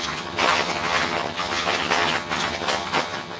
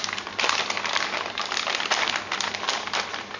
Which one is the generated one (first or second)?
first